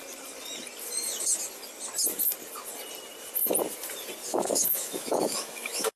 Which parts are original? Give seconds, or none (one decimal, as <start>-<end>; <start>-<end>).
0.0-4.3